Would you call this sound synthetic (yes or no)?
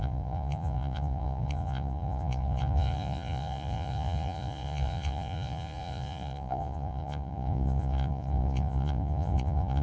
yes